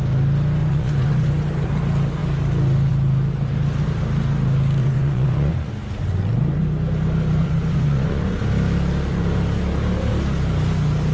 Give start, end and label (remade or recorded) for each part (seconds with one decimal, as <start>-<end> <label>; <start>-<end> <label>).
0.0-0.6 recorded; 0.6-1.3 remade; 1.3-4.8 recorded; 4.8-5.7 remade; 5.7-7.4 recorded; 7.4-8.4 remade; 8.4-11.1 recorded